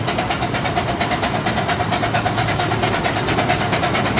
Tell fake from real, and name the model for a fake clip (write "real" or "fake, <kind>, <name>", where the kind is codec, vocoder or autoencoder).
fake, vocoder, BigVGAN v2